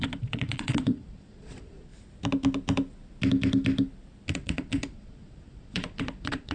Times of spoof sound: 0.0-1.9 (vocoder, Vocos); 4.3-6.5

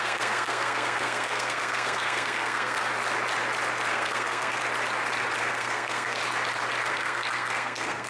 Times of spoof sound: 0.0-2.9 (codec, SNAC); 3.9-4.6; 5.4-6.2; 6.9-8.1

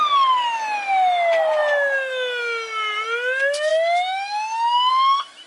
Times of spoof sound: none

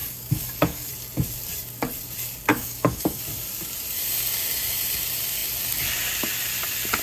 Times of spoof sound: 0.0-0.9 (codec, DAC); 2.5-3.2

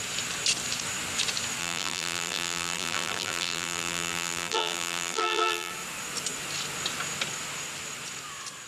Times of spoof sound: 1.6-5.7 (vocoder, BigVGAN v2)

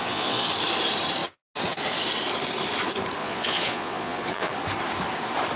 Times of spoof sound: 0.0-0.5 (vocoder, Vocos); 3.2-4.5

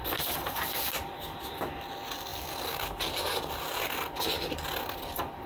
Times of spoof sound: 0.0-0.7 (vocoder, BigVGAN v2)

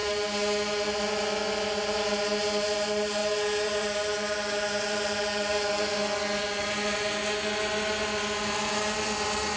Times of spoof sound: none